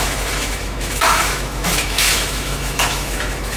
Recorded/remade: remade